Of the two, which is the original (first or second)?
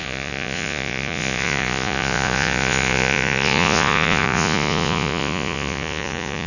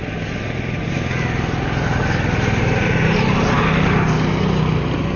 second